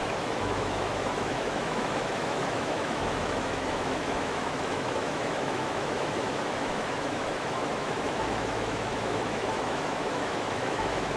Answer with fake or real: fake